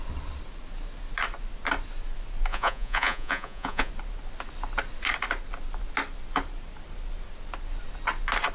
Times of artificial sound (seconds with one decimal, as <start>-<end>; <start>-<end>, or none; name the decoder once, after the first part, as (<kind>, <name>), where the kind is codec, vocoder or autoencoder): 2.5-3.9 (vocoder, Vocos)